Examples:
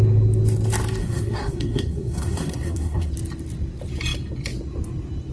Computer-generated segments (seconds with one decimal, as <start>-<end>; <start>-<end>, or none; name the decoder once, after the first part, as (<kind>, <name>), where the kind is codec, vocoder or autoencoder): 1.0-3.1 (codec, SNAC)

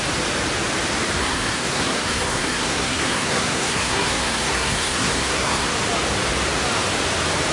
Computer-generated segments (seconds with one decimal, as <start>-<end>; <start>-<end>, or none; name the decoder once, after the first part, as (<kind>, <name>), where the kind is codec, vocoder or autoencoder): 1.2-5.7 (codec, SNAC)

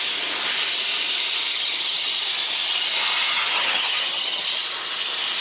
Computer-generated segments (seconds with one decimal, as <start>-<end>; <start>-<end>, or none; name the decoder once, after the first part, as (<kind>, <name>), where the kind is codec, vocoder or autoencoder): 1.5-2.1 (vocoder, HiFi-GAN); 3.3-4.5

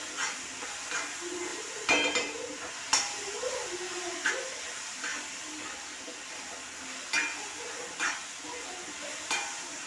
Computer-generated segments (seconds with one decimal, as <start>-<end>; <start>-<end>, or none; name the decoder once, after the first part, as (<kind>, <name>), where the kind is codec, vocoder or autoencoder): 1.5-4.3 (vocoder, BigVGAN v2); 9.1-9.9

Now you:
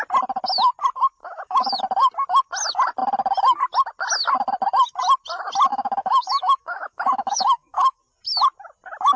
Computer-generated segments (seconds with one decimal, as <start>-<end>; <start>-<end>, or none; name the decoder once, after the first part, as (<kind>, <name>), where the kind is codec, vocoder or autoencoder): 1.2-1.8 (autoencoder, DAC-VAE); 5.7-8.0

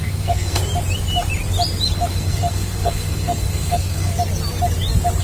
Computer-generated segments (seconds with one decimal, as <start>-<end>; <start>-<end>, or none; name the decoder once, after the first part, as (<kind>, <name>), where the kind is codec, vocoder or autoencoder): 0.0-0.6 (codec, SNAC); 2.1-4.1

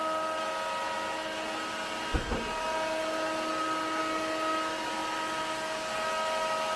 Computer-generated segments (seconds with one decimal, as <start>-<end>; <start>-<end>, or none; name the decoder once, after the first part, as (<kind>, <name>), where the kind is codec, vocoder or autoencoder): none

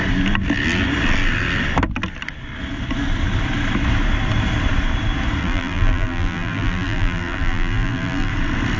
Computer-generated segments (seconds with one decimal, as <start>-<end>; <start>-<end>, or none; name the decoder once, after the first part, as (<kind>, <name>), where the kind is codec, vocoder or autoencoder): 5.4-8.3 (vocoder, BigVGAN v2)